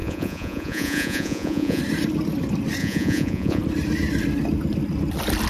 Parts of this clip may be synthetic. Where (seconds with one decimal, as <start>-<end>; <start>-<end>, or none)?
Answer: 0.0-1.8; 2.8-3.6